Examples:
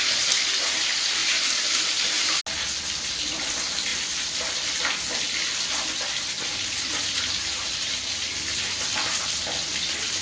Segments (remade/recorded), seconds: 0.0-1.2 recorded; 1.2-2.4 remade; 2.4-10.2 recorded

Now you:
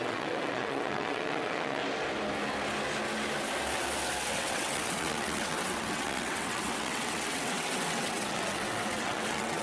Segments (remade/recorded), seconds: 0.0-1.8 remade; 1.8-4.3 recorded; 4.3-9.6 remade

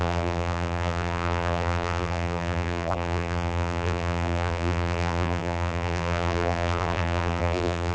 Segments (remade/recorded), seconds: 0.0-7.9 remade